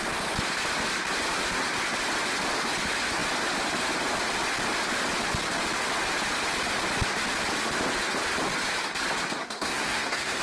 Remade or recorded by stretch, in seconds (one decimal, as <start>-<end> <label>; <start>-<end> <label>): 0.0-9.4 recorded; 9.4-10.4 remade